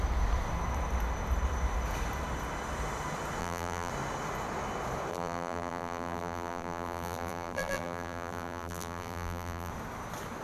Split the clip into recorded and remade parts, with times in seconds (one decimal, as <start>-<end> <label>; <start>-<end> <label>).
0.0-3.4 recorded; 3.4-3.9 remade; 3.9-5.1 recorded; 5.1-9.7 remade; 9.7-10.4 recorded